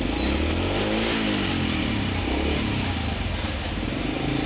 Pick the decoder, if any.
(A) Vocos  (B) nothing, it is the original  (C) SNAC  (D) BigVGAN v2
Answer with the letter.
B